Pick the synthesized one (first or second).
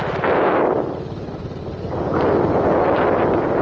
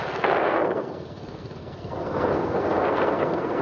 second